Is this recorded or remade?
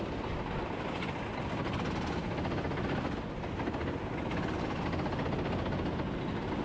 recorded